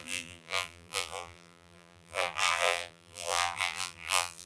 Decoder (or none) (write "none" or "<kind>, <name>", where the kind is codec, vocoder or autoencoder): vocoder, BigVGAN v2